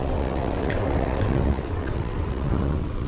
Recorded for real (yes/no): no